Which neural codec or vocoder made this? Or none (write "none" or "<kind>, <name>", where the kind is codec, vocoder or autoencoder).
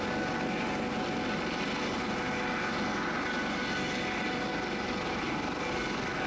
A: none